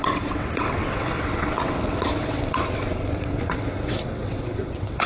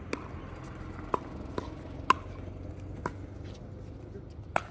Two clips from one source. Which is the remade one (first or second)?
first